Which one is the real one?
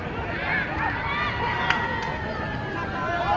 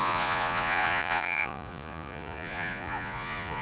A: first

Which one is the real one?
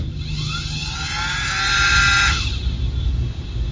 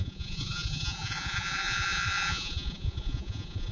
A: first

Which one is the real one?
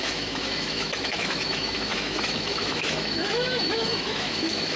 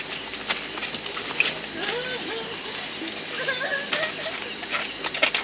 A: second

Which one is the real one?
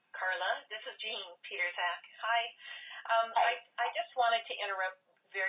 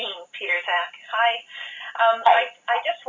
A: first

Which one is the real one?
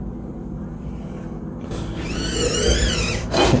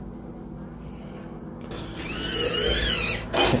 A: second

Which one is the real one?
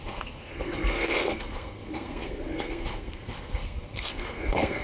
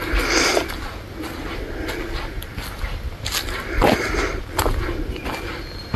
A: second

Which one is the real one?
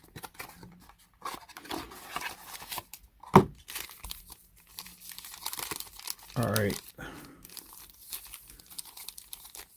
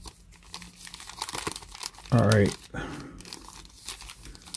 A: second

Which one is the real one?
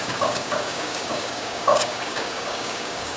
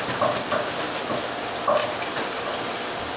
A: second